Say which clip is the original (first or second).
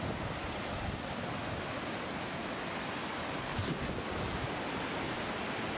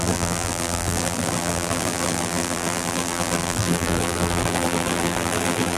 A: first